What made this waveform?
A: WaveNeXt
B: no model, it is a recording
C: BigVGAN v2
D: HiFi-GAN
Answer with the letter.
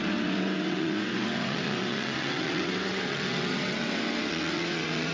A